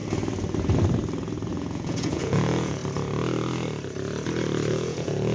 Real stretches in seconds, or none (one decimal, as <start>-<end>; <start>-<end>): 0.0-1.5; 2.8-4.7